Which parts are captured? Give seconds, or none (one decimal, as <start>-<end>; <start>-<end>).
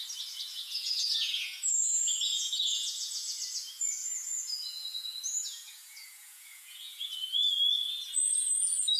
0.0-0.5; 3.4-4.0; 7.5-9.0